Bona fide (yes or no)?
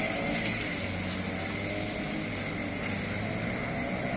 yes